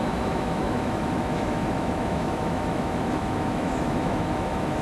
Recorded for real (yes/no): no